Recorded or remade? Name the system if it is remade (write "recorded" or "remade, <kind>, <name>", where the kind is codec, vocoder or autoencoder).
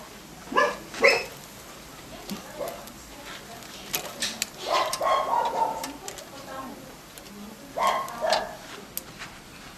recorded